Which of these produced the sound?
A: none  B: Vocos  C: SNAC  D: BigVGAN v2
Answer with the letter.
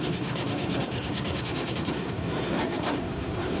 C